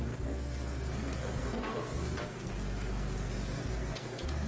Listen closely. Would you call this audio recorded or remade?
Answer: remade